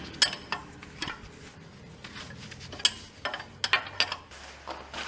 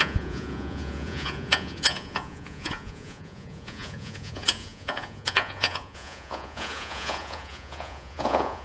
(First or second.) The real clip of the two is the first